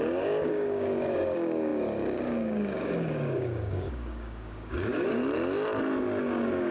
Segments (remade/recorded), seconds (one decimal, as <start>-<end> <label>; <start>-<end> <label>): 0.0-5.2 remade; 5.2-6.2 recorded; 6.2-6.7 remade